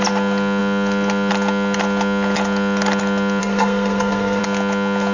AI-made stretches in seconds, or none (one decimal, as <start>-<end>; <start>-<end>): 3.4-4.4